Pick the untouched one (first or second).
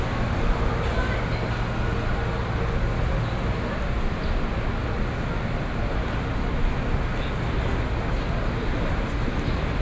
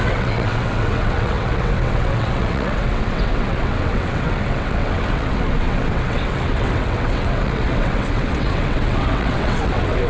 first